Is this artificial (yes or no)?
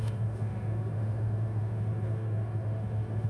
yes